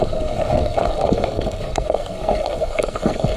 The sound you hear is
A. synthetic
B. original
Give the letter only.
A